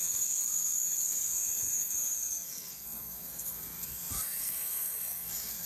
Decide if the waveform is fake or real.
fake